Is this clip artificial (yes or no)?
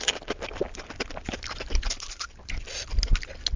no